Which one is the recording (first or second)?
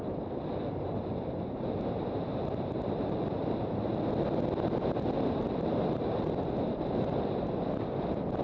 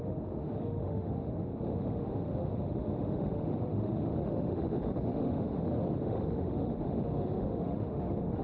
first